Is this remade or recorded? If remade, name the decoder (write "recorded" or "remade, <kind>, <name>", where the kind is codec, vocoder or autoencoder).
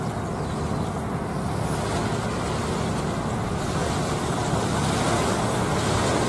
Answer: recorded